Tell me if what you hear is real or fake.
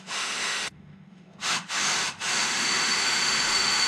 fake